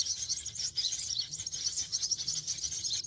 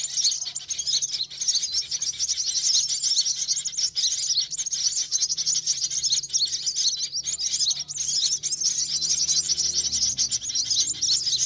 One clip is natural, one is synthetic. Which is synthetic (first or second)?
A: first